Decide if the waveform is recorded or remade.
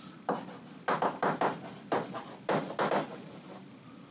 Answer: recorded